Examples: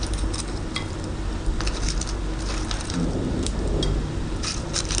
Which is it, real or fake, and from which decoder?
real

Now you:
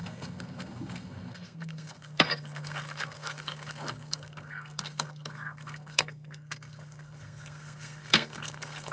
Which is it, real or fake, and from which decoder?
fake, codec, SNAC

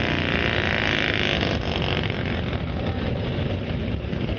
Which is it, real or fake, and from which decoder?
real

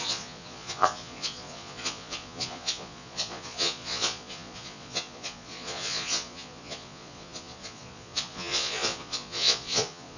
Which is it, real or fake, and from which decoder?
fake, vocoder, Vocos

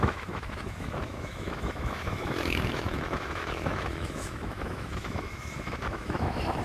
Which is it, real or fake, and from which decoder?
fake, autoencoder, DAC-VAE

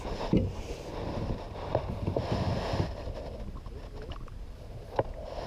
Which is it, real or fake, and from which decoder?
real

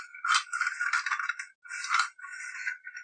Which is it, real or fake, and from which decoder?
real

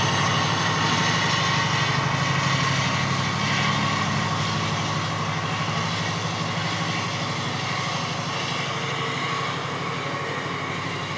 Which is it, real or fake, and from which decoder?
real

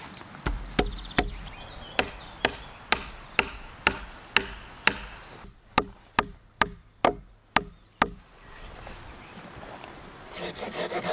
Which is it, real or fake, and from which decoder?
real